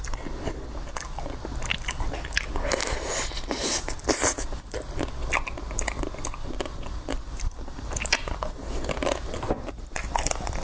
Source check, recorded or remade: recorded